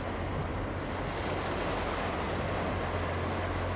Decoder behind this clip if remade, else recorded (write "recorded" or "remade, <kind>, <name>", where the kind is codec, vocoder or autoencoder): recorded